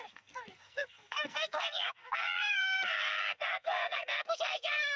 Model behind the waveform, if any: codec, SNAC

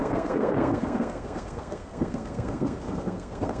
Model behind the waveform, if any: codec, SNAC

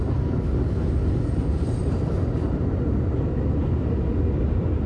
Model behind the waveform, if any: none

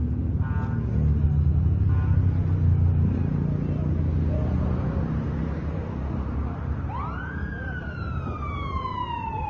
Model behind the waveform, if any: none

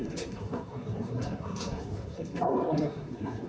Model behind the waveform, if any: codec, SNAC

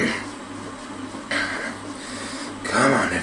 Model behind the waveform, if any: none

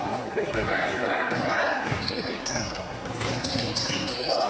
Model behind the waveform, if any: codec, SNAC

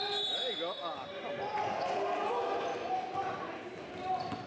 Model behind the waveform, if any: none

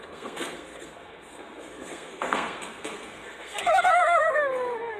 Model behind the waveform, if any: codec, SNAC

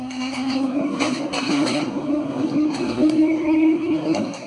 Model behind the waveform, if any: codec, SNAC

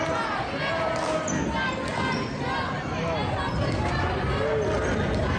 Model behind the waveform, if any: none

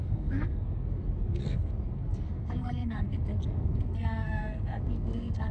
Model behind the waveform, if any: codec, SNAC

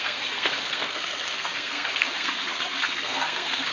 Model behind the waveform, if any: codec, SNAC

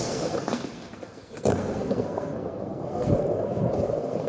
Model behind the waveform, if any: codec, SNAC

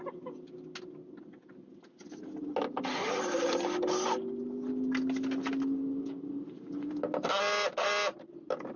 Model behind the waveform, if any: none